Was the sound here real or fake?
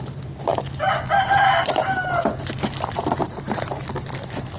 fake